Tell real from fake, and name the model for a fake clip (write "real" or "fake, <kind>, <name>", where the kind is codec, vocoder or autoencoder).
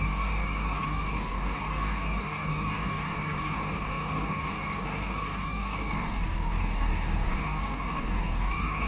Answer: fake, codec, DAC